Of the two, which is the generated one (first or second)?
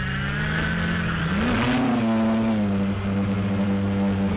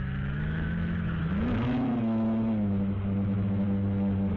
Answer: second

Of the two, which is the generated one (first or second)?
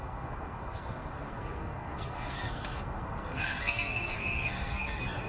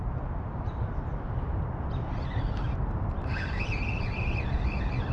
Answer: first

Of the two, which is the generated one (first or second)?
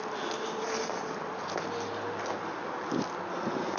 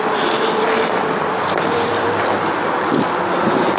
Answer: second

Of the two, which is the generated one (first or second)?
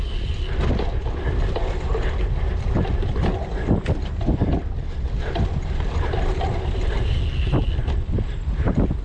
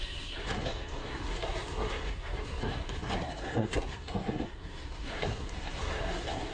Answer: second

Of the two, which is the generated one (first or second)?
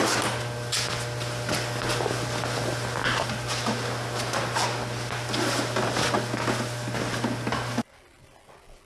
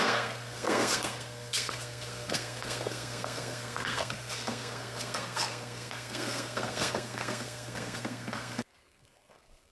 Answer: second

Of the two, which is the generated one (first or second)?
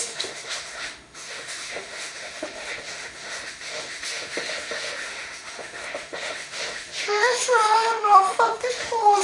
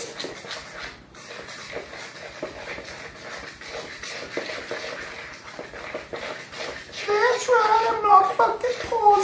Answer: first